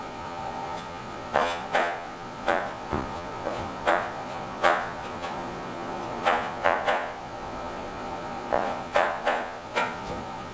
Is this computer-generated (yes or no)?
yes